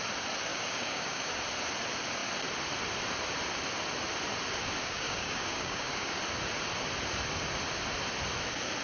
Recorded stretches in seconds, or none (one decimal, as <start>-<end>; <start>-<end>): 0.0-0.5; 1.3-4.8; 6.2-8.8